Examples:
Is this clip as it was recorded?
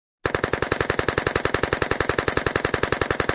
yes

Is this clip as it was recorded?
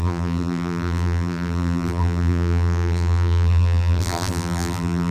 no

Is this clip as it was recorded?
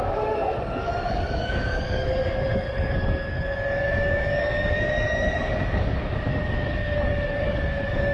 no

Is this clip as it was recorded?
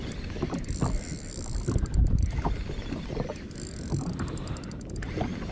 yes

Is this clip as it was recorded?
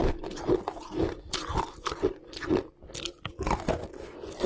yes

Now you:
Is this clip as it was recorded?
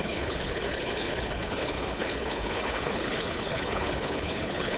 no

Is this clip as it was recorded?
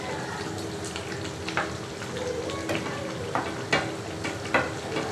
yes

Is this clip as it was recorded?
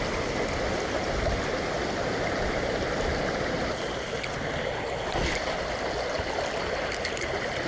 yes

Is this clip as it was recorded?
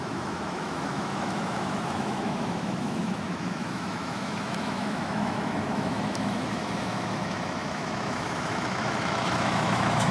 no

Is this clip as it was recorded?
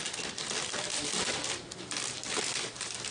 yes